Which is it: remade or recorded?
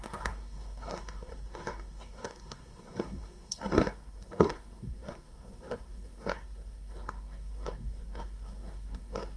remade